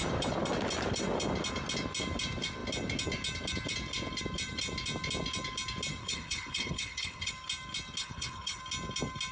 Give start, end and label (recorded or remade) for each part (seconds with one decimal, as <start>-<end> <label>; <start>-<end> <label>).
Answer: 0.0-6.0 recorded; 6.0-7.3 remade; 7.3-8.0 recorded; 8.0-8.6 remade; 8.6-9.3 recorded